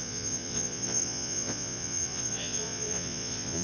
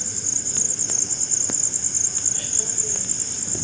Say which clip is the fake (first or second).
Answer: first